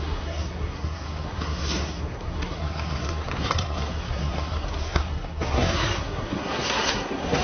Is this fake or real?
fake